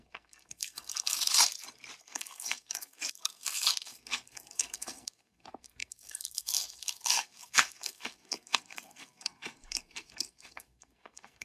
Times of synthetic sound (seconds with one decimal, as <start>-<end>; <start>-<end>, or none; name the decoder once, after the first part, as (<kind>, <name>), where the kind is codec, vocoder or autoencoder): 0.0-1.3 (codec, SNAC); 2.0-11.4